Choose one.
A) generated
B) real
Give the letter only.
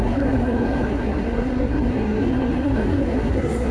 A